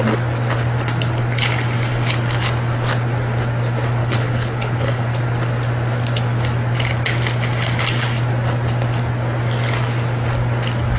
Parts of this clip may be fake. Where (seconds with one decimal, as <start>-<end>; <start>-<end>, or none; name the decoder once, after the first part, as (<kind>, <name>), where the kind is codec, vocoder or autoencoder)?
4.0-5.2 (codec, HILCodec)